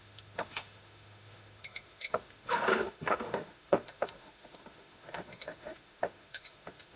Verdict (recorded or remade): remade